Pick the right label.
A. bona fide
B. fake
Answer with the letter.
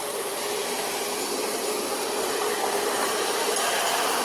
B